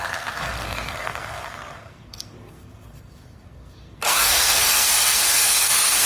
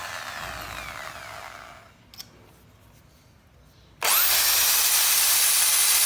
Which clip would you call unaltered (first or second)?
second